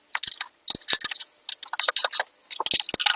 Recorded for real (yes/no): yes